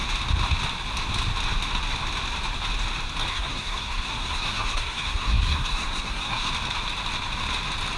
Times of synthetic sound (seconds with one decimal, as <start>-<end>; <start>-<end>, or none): 3.3-6.5